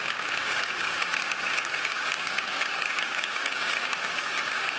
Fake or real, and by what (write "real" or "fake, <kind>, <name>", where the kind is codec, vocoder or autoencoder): fake, codec, DAC